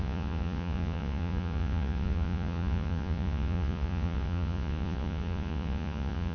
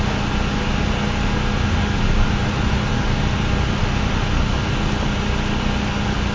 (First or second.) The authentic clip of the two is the second